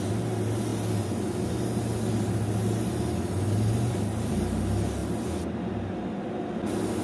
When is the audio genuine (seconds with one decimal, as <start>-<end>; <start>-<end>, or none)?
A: 0.0-7.0